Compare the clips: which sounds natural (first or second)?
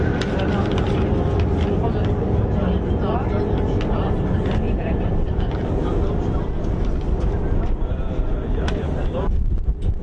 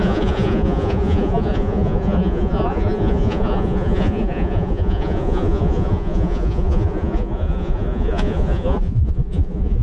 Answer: first